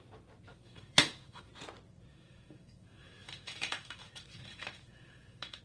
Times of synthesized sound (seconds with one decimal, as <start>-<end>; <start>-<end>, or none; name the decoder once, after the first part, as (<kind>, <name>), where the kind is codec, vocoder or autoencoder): 0.5-1.5 (autoencoder, DAC-VAE); 2.1-5.6

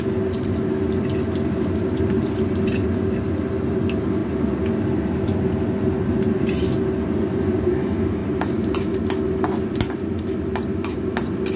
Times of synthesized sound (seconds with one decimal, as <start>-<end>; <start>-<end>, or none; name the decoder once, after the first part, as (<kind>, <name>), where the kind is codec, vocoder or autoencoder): 8.2-8.8 (vocoder, BigVGAN v2)

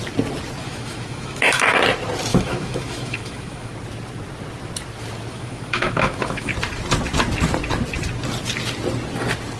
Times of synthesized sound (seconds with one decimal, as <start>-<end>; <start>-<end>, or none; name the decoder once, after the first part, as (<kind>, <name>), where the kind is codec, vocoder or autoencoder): 0.6-1.8 (autoencoder, DAC-VAE); 2.3-3.7; 5.3-6.5